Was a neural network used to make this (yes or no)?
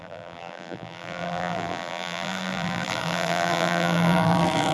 yes